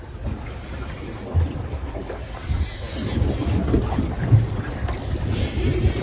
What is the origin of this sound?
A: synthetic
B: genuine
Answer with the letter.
B